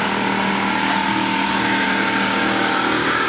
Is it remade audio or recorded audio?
remade